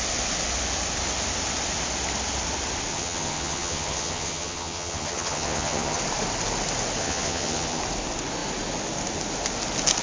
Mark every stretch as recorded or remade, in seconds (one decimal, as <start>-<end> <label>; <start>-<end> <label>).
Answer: 0.0-2.9 recorded; 2.9-6.0 remade; 6.0-7.0 recorded; 7.0-7.8 remade; 7.8-10.0 recorded

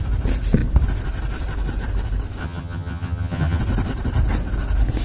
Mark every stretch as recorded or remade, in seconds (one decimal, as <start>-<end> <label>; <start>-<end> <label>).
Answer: 0.0-2.4 recorded; 2.4-3.6 remade; 3.6-5.0 recorded

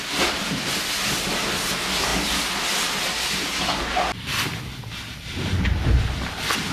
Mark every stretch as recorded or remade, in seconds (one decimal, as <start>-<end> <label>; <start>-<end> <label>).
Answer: 0.0-6.7 recorded

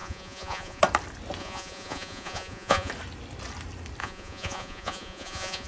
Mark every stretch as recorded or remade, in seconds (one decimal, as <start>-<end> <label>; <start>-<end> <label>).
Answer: 0.0-0.8 remade; 0.8-1.4 recorded; 1.4-2.9 remade; 2.9-4.0 recorded; 4.0-5.7 remade